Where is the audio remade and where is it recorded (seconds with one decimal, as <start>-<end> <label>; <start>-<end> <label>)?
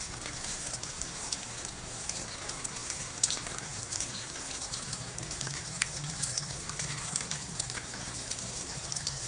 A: 0.0-9.3 remade